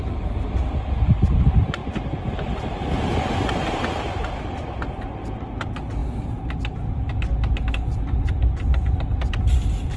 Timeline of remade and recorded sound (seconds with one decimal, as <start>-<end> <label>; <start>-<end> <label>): 0.0-10.0 recorded